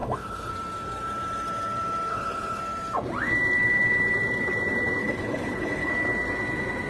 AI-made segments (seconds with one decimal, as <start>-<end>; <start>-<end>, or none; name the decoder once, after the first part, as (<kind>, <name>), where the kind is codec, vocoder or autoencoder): 0.0-0.5 (codec, HILCodec); 2.1-2.6; 5.0-5.9